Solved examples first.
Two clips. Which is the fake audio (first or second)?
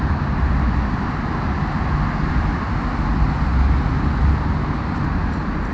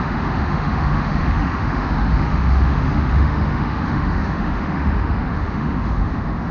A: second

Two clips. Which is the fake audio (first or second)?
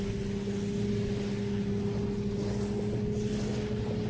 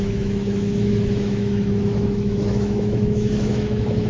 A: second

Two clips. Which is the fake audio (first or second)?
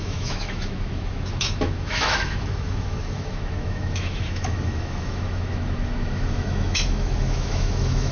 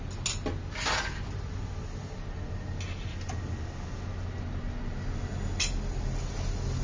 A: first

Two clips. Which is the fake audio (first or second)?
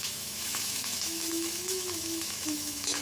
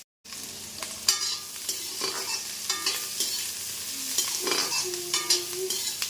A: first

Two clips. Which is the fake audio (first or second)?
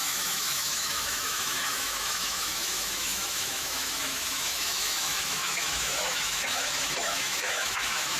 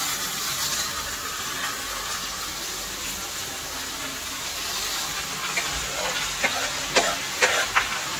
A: first